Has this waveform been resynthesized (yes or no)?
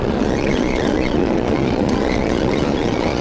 yes